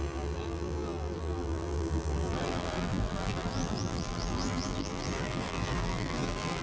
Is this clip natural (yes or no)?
no